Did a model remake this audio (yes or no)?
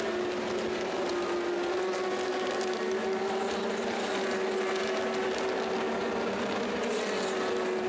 no